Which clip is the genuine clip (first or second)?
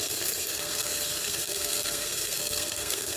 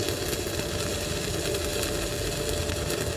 second